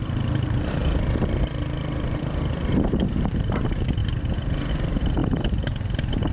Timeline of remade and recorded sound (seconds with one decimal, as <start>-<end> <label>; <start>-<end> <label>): 0.0-4.0 remade; 4.0-4.7 recorded; 4.7-6.3 remade